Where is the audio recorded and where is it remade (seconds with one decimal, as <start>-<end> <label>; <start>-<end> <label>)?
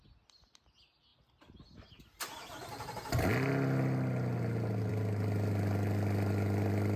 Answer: 0.0-7.0 recorded